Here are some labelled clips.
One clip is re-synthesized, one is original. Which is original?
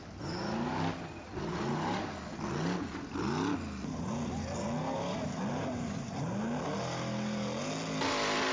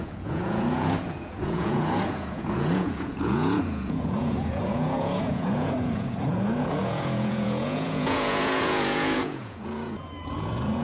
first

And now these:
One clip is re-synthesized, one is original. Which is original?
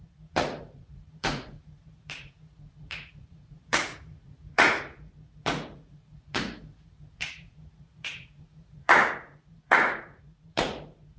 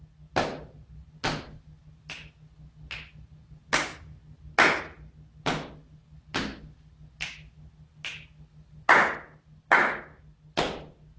second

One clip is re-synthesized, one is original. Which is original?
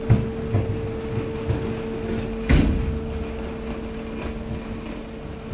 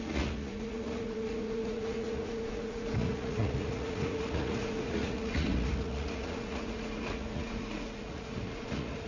first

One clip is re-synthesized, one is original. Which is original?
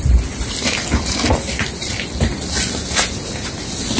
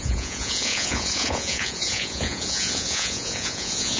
first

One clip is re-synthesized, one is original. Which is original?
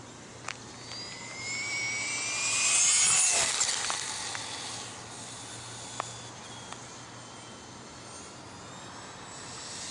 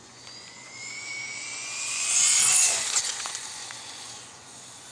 first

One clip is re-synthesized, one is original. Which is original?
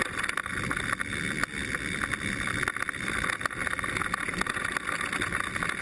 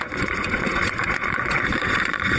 first